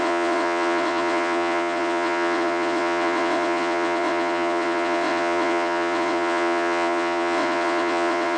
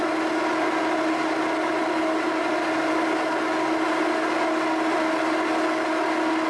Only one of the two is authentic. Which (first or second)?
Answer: second